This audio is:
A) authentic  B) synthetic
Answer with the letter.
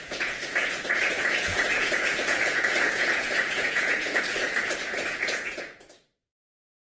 B